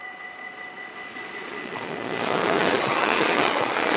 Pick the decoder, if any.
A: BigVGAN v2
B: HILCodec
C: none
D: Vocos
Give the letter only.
D